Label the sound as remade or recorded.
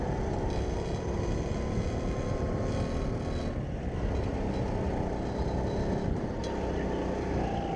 recorded